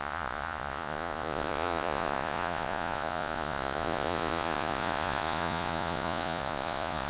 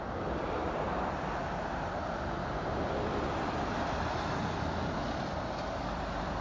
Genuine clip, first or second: second